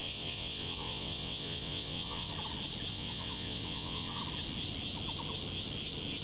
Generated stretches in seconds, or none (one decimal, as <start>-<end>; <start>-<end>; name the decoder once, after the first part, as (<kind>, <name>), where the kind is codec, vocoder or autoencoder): 0.0-2.3 (vocoder, WaveNeXt); 2.9-4.2